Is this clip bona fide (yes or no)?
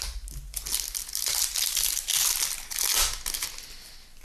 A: yes